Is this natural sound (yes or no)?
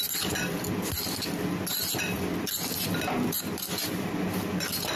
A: yes